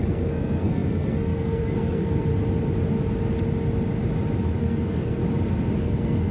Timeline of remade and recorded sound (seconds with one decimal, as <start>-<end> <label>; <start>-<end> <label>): 0.0-2.3 remade; 2.3-4.6 recorded; 4.6-5.2 remade; 5.2-5.8 recorded; 5.8-6.3 remade